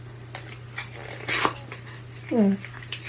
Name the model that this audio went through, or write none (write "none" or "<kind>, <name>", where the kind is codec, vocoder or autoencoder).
none